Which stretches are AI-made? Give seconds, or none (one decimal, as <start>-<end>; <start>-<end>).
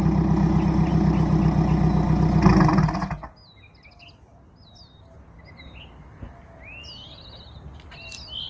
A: none